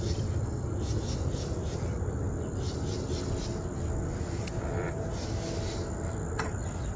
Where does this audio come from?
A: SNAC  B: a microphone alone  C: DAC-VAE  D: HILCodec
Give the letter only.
B